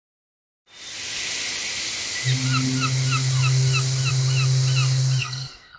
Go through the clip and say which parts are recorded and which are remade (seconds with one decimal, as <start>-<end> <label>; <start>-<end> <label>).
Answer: 0.0-5.2 recorded; 5.2-5.8 remade